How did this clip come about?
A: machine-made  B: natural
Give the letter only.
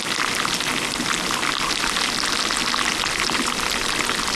B